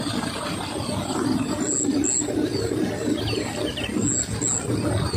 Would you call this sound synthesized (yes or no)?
no